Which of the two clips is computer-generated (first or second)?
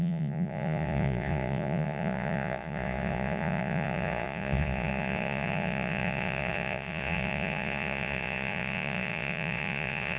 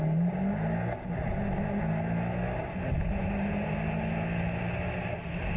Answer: first